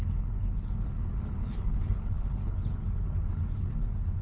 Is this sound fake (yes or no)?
yes